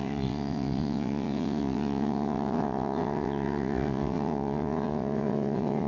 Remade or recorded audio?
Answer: remade